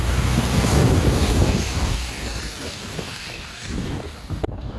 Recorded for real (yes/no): no